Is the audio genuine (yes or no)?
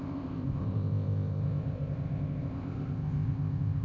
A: no